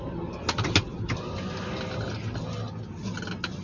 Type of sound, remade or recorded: recorded